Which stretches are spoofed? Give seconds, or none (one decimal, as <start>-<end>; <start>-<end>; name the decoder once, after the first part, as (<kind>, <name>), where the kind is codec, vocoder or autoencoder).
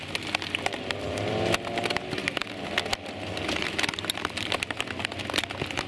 none